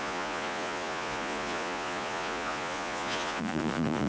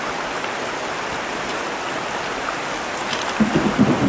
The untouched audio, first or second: second